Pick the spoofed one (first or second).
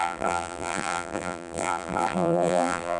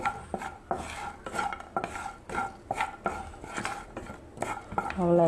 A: first